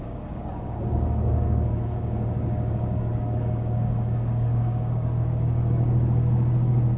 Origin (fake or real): fake